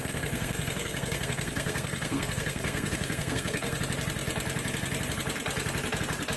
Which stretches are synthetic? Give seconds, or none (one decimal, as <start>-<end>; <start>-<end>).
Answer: 0.0-3.8